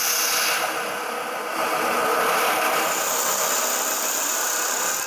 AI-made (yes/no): yes